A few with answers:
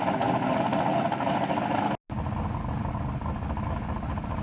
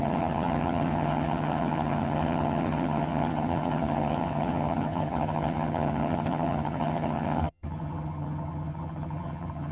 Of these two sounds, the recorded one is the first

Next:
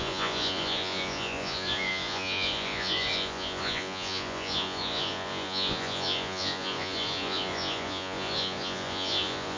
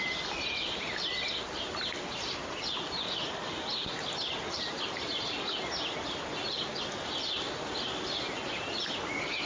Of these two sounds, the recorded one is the second